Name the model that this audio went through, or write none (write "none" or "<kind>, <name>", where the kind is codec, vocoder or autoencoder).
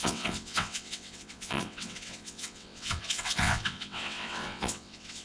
vocoder, WaveNeXt